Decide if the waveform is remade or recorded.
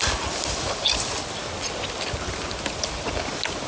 recorded